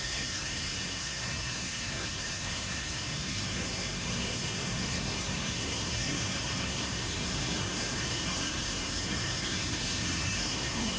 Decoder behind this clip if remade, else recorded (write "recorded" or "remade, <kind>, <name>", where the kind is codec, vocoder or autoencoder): remade, codec, SNAC